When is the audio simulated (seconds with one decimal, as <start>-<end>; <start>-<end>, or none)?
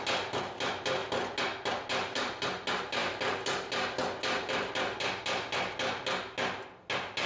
none